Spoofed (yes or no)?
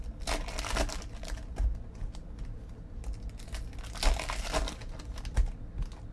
no